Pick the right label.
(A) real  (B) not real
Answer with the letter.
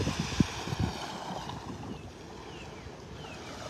A